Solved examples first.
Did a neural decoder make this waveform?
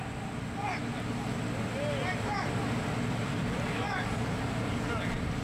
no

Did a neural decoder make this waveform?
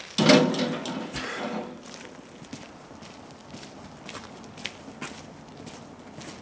no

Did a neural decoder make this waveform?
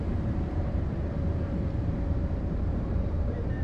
yes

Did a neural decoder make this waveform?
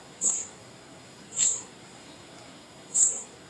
yes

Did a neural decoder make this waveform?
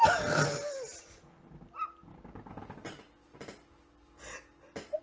no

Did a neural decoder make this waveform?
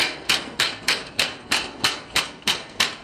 yes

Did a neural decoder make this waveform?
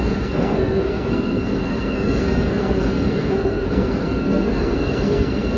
yes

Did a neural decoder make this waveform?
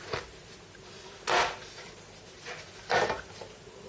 no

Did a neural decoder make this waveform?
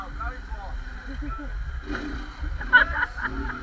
no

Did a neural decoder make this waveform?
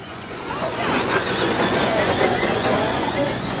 yes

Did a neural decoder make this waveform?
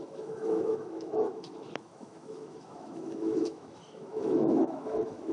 yes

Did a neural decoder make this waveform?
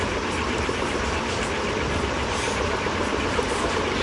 no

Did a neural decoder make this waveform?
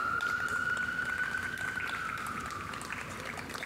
no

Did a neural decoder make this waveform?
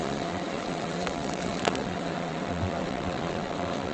yes